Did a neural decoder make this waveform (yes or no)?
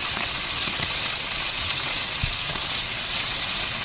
yes